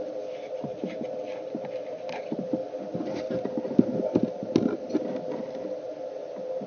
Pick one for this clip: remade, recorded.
recorded